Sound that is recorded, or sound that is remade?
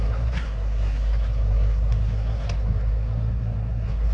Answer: remade